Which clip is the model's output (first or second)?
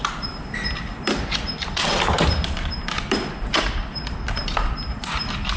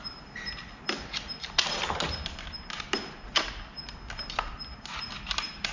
first